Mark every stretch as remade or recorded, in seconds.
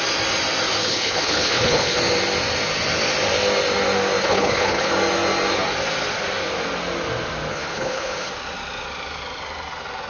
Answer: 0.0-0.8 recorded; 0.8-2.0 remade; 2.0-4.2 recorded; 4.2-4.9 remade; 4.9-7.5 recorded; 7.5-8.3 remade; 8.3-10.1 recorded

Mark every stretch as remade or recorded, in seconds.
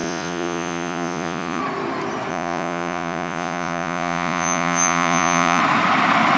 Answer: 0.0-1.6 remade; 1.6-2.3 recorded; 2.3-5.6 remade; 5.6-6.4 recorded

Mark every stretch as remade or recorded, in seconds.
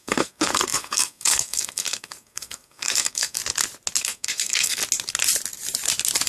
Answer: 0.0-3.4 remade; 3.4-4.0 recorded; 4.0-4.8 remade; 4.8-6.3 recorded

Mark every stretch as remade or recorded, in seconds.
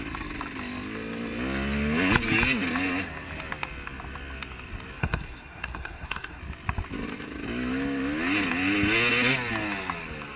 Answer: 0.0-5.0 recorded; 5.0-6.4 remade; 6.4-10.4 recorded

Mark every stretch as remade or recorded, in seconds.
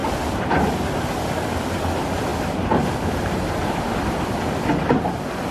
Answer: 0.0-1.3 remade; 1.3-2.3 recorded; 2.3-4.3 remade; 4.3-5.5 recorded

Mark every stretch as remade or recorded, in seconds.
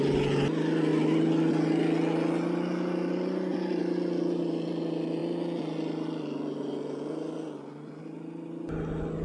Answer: 0.0-9.2 recorded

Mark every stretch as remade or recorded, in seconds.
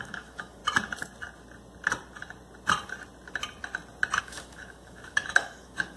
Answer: 0.0-0.6 remade; 0.6-4.2 recorded; 4.2-6.0 remade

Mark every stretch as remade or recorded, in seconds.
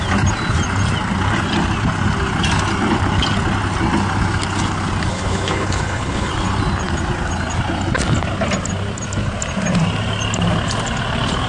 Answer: 0.0-5.1 recorded; 5.1-6.3 remade; 6.3-11.5 recorded